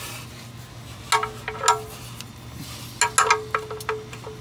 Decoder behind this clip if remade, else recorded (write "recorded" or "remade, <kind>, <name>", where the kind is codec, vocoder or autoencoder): recorded